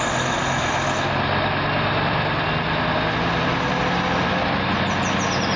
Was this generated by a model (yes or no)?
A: no